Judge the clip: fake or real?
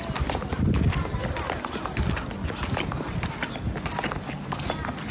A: real